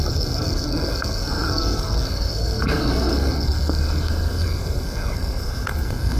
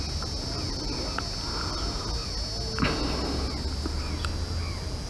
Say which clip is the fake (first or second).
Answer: first